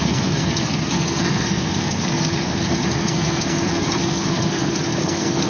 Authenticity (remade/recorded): remade